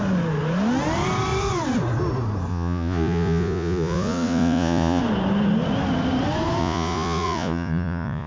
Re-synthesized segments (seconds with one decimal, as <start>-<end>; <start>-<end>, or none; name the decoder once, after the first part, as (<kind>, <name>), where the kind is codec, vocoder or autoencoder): 2.5-5.0 (vocoder, Vocos); 6.6-8.3